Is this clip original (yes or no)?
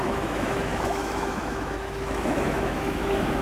no